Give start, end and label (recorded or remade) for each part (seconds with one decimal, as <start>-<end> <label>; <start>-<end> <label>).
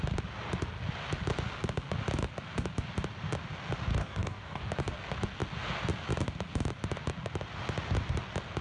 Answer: 0.0-4.0 recorded; 4.0-4.6 remade; 4.6-8.6 recorded